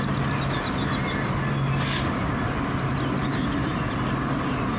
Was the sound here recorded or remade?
recorded